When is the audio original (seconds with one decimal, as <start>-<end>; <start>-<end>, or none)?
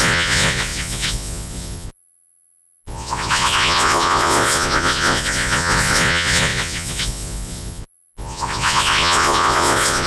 none